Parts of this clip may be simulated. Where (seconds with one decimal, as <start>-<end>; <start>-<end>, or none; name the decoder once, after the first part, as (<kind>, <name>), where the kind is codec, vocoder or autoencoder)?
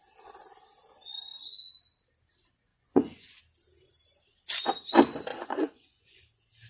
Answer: 2.7-3.4 (vocoder, Vocos); 5.3-6.2